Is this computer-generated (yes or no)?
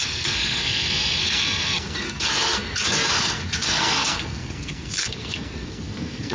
yes